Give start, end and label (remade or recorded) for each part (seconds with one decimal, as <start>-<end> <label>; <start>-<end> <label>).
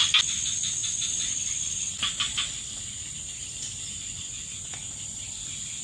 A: 0.0-5.8 recorded